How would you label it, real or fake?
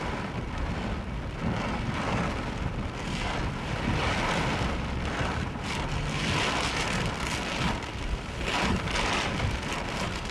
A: real